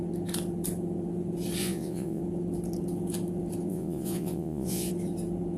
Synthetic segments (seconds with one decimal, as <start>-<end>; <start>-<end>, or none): 1.6-2.2; 3.7-4.9